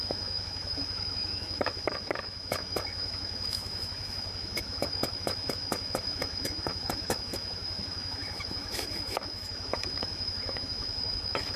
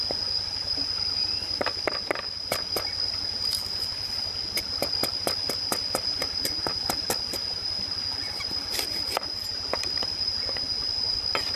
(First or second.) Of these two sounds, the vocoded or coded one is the first